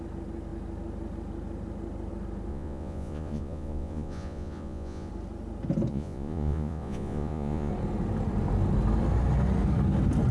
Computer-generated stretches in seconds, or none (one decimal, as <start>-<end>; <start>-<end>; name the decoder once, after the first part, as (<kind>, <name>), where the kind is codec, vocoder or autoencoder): 2.5-5.1 (vocoder, Vocos); 5.9-7.7